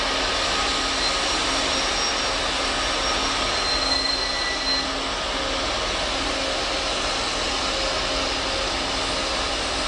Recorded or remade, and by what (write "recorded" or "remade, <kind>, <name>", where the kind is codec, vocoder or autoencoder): recorded